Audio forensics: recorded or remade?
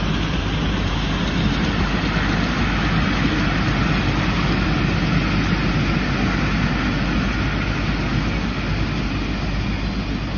recorded